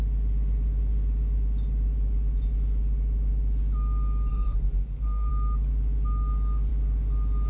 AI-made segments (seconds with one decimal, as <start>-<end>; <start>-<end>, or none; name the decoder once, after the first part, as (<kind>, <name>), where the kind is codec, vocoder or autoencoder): 4.3-5.3 (codec, SNAC)